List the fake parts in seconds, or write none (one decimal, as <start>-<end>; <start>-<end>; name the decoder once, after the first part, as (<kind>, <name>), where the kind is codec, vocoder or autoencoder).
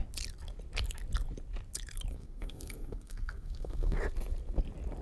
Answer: 2.1-4.0 (codec, SNAC)